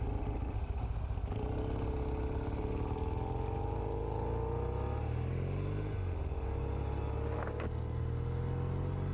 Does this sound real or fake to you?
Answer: real